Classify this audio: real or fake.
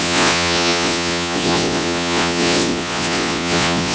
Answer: fake